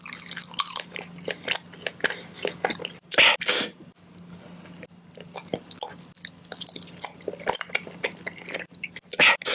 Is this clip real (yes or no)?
yes